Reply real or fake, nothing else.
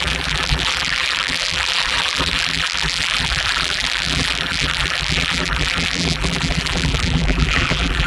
fake